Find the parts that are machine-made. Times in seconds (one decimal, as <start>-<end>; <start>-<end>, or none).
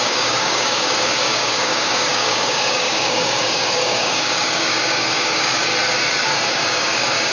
0.0-5.7; 6.5-7.3